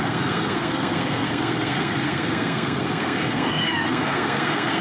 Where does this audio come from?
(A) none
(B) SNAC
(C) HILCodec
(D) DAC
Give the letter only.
B